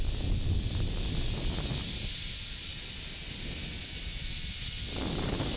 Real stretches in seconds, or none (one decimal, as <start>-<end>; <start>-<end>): 0.0-5.6